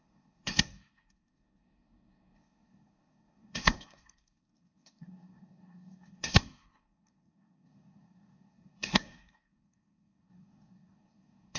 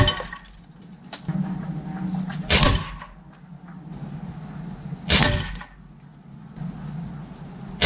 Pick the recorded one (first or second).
second